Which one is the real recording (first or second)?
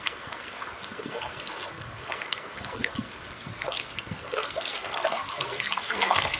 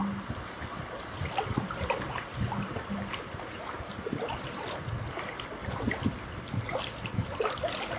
second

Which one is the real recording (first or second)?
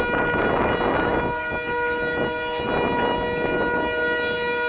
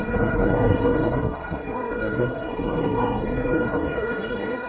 first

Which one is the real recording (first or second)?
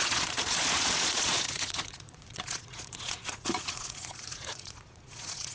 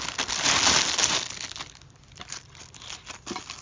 second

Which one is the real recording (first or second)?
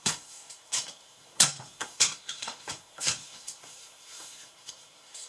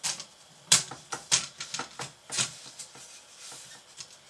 second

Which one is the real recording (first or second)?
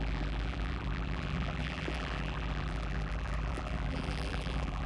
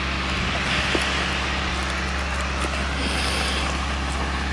second